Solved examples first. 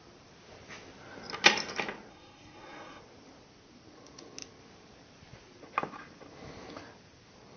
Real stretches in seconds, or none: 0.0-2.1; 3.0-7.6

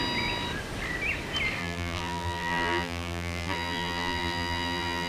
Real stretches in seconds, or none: 0.0-1.6

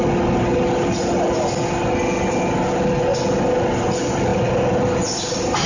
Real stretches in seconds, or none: 0.0-5.7

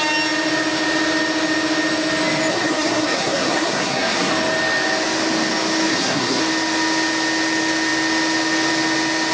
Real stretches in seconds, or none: 0.0-2.5; 4.3-5.9; 6.4-9.3

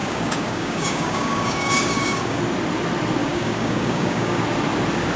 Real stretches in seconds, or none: 2.4-3.2; 4.4-5.2

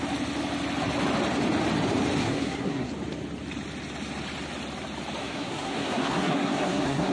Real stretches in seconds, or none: 0.0-2.2; 2.9-5.2

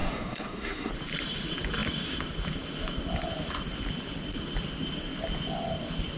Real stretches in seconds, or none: 0.9-6.2